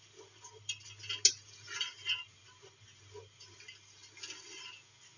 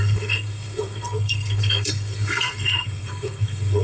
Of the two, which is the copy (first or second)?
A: second